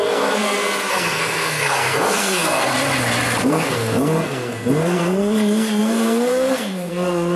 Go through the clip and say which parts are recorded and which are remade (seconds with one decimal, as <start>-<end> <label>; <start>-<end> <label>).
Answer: 0.0-2.7 remade; 2.7-3.4 recorded; 3.4-7.4 remade